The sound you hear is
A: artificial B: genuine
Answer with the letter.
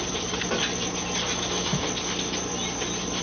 B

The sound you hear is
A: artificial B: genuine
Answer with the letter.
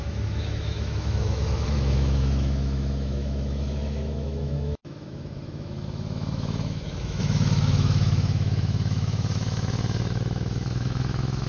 A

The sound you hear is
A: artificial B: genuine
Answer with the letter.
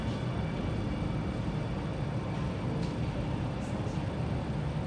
B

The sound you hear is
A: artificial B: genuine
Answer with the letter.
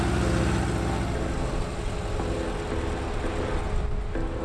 B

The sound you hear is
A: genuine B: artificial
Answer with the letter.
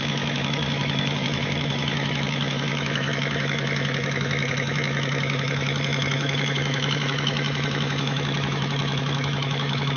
B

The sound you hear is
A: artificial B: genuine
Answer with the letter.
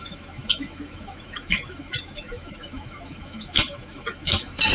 A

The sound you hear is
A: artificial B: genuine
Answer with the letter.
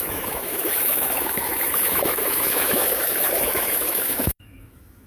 A